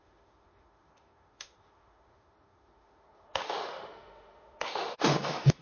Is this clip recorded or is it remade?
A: remade